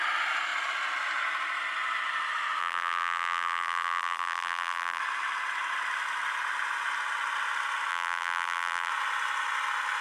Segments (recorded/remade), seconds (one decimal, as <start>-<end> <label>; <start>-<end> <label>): 0.0-2.6 recorded; 2.6-5.0 remade; 5.0-7.9 recorded; 7.9-8.9 remade; 8.9-10.0 recorded